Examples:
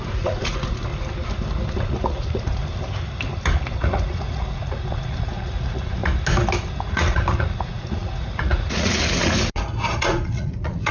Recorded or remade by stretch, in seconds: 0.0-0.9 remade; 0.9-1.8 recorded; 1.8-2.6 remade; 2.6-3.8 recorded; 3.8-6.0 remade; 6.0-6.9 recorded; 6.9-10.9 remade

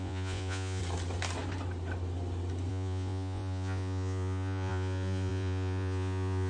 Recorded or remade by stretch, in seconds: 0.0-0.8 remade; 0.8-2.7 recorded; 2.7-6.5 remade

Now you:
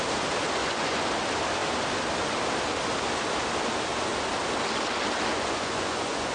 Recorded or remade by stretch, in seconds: 0.0-0.6 recorded; 0.6-1.1 remade; 1.1-5.3 recorded; 5.3-6.3 remade

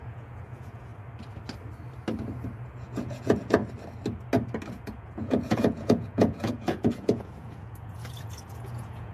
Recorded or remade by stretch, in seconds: 0.0-0.9 remade; 0.9-2.6 recorded; 2.6-3.6 remade; 3.6-4.7 recorded; 4.7-9.1 remade